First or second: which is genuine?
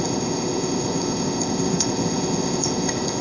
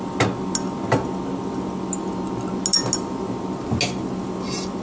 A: second